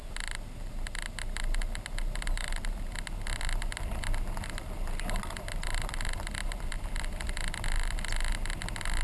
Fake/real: real